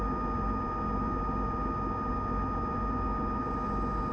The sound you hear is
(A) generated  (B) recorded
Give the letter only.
B